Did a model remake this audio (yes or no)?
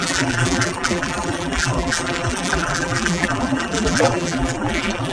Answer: yes